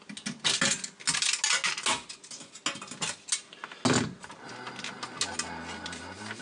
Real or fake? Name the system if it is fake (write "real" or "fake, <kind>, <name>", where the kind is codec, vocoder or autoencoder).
real